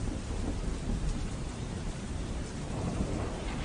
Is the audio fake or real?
fake